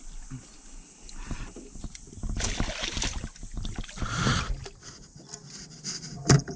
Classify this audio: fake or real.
real